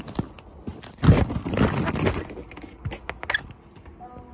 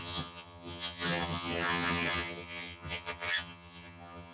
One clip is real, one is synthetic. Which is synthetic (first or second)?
second